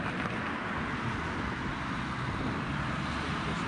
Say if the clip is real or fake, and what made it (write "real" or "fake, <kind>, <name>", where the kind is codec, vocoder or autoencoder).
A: real